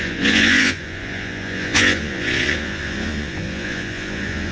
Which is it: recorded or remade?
remade